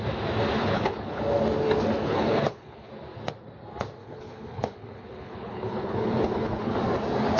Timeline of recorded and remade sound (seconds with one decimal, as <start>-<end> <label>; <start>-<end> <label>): 0.0-0.6 recorded; 0.6-1.2 remade; 1.2-2.0 recorded; 2.0-2.9 remade; 2.9-4.0 recorded; 4.0-6.7 remade; 6.7-7.4 recorded